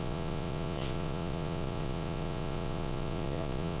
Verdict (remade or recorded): remade